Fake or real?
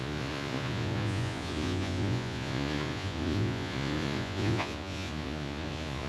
fake